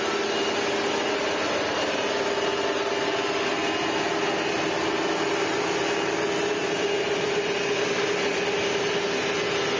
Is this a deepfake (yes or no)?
no